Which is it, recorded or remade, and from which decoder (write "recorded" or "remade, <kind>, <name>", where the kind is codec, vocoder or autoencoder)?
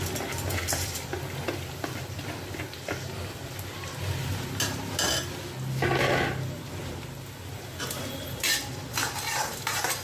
recorded